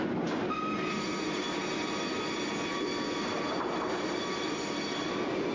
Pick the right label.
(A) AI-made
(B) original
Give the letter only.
B